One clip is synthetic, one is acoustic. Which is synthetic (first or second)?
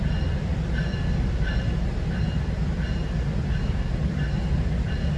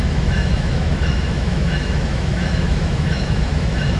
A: second